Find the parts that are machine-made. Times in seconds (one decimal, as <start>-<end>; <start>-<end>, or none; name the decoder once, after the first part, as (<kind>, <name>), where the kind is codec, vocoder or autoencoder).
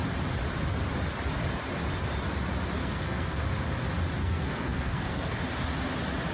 2.8-3.4 (codec, SNAC); 4.2-5.3